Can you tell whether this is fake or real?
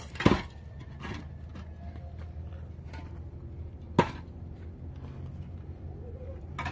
real